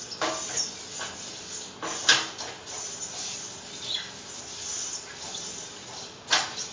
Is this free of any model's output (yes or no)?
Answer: yes